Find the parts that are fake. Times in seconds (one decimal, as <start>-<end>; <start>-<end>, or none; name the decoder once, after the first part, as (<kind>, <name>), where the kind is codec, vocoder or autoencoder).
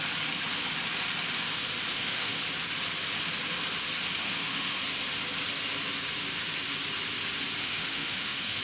1.9-2.4 (autoencoder, DAC-VAE); 4.2-4.8; 7.6-8.6